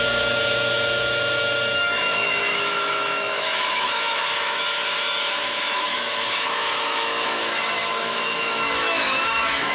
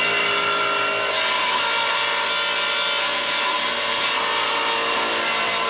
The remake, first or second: first